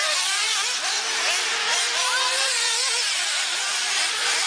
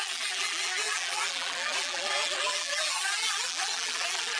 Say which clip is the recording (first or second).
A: first